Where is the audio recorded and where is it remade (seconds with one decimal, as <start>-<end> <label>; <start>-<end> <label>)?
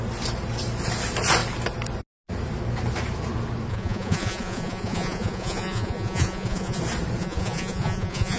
0.0-3.7 recorded; 3.7-6.8 remade; 6.8-7.2 recorded; 7.2-8.4 remade